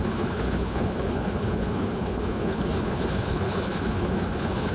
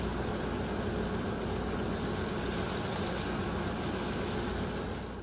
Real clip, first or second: second